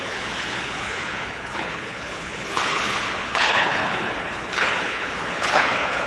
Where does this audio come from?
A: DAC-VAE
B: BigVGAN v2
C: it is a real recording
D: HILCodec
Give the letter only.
D